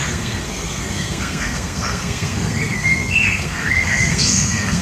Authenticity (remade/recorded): remade